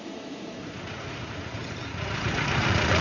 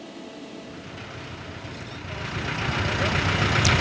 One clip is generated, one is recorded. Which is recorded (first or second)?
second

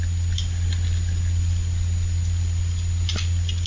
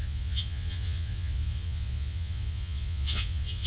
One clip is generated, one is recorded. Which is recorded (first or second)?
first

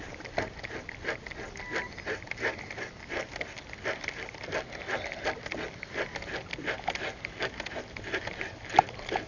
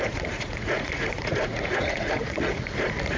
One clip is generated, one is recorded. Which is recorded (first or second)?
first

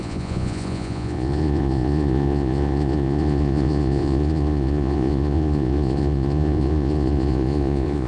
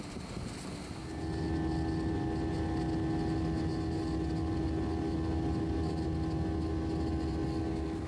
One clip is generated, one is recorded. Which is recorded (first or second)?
second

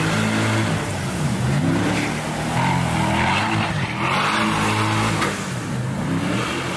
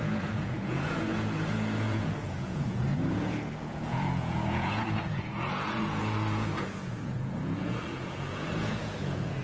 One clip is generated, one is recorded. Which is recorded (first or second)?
first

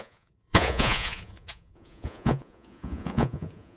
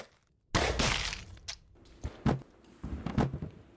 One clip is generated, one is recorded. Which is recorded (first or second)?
second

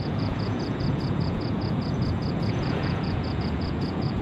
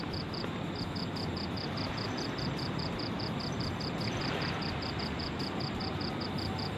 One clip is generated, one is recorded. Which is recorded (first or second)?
second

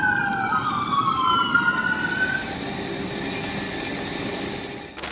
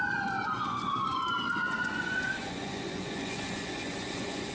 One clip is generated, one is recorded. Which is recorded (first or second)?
first